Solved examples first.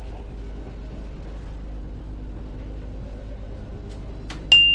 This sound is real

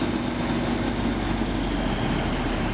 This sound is real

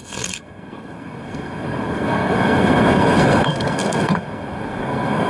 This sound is fake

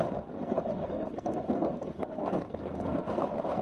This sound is fake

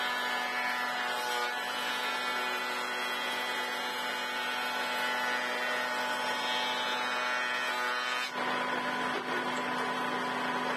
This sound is real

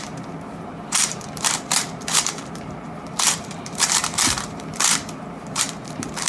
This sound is fake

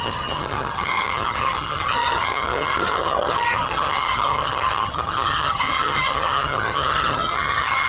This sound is fake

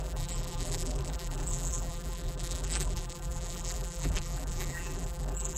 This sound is fake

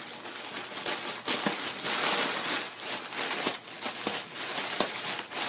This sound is real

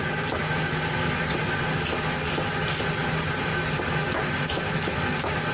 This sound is real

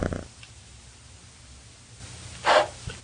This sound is real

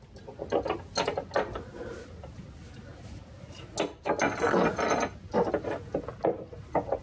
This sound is real